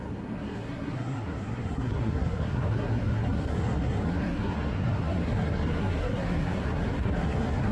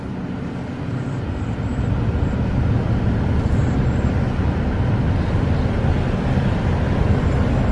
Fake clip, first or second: first